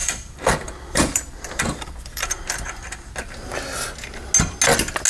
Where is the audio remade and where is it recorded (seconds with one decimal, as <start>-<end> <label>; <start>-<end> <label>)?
0.0-3.1 remade; 3.1-5.1 recorded